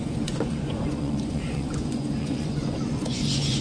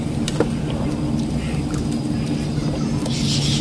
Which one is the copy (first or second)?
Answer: first